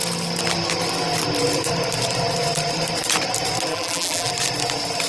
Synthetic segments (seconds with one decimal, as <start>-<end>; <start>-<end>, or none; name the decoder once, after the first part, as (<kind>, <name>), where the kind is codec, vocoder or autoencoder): 3.7-4.3 (vocoder, BigVGAN v2)